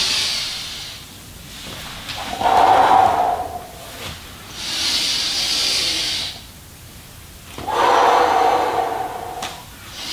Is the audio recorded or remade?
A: recorded